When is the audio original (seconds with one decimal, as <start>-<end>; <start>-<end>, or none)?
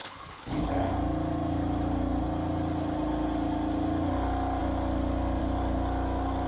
0.9-6.5